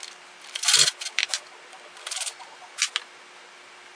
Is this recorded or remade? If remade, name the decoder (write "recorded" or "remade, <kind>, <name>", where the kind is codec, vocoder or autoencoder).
recorded